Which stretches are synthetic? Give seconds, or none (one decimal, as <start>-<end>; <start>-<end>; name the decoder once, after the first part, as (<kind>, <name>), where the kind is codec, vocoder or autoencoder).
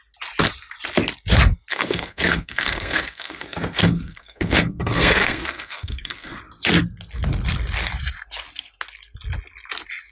1.7-6.4 (codec, SNAC)